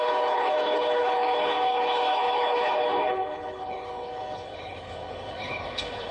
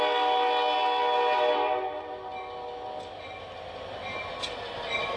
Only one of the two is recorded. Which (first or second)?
second